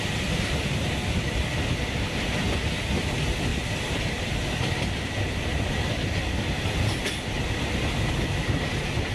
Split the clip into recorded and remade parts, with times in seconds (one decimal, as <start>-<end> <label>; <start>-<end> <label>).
0.0-9.1 recorded